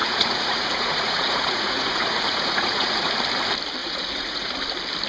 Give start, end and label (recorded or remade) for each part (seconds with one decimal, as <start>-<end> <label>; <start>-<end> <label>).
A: 0.0-3.1 remade; 3.1-3.8 recorded; 3.8-4.5 remade; 4.5-5.1 recorded